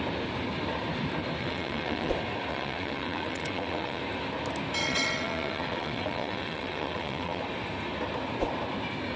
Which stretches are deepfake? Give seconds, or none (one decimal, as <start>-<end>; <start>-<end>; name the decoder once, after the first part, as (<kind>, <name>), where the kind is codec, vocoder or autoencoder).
1.4-2.1 (vocoder, WaveNeXt); 2.5-4.0; 4.8-7.4